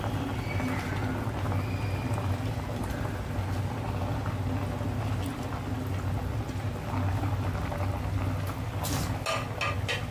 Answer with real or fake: real